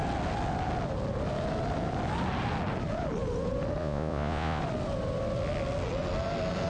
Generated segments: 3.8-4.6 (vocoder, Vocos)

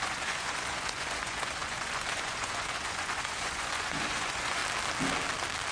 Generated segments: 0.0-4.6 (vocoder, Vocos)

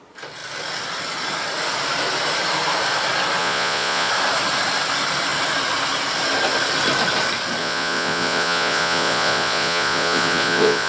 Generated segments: 3.4-4.1 (vocoder, Vocos); 7.6-10.9

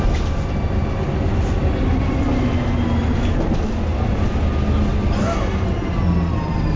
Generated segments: none

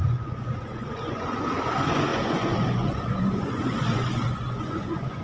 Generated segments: 0.0-5.2 (vocoder, Vocos)